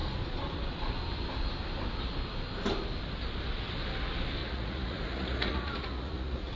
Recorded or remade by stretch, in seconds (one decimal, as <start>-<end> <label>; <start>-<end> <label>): 0.0-4.4 recorded; 4.4-6.6 remade